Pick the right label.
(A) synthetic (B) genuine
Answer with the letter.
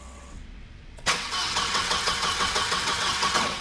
A